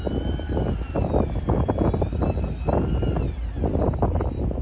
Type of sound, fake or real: real